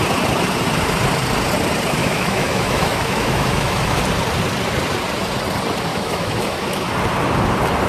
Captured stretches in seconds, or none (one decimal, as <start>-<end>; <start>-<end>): 0.0-2.0; 4.0-5.9; 6.9-7.9